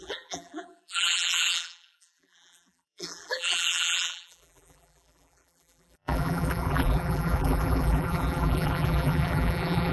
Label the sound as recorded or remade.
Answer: remade